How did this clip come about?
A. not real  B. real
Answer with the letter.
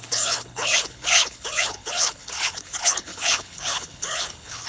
A